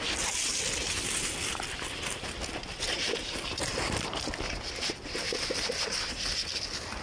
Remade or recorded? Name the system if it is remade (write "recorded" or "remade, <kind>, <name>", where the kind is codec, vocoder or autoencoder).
recorded